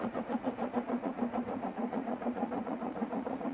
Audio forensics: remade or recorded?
remade